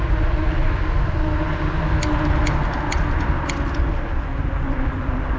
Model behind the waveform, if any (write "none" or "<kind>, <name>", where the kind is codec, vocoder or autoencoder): none